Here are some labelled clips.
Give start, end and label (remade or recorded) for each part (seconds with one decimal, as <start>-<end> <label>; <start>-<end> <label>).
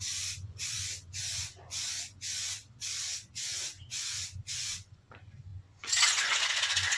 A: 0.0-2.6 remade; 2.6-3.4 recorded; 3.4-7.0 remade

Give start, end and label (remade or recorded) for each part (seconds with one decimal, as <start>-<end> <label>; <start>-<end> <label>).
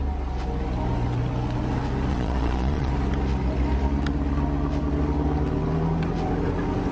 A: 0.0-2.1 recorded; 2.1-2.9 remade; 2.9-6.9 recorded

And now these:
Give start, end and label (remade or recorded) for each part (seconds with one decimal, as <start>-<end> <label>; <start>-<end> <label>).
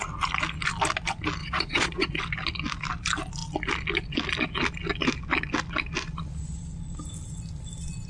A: 0.0-1.4 recorded; 1.4-2.2 remade; 2.2-8.1 recorded